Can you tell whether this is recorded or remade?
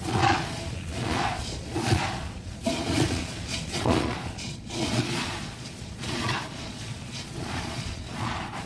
remade